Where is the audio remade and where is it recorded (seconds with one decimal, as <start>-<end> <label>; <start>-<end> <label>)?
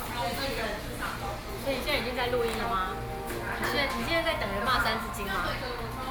0.0-6.1 recorded